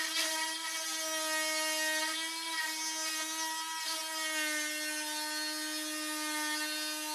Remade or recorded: recorded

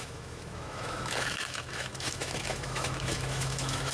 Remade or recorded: remade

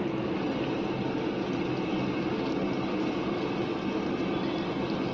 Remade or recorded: recorded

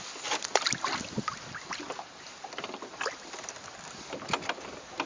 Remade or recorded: recorded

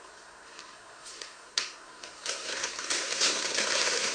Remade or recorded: remade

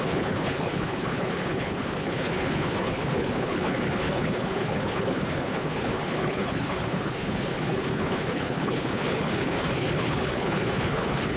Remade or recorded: remade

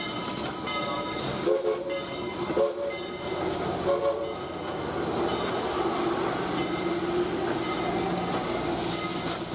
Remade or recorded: recorded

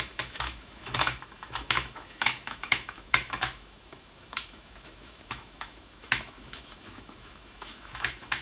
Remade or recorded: remade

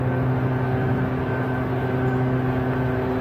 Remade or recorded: recorded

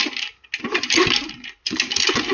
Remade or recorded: recorded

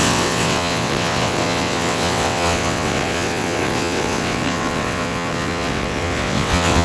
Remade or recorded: remade